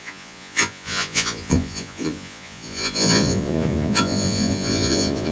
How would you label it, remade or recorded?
remade